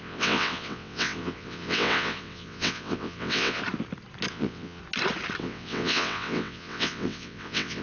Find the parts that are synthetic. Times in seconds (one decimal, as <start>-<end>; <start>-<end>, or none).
0.0-3.6; 4.3-4.8; 5.4-7.8